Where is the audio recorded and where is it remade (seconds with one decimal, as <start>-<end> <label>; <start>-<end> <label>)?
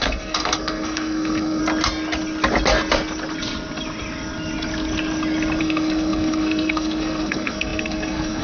0.0-1.6 remade; 1.6-5.6 recorded; 5.6-8.4 remade